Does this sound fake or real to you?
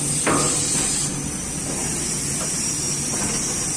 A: real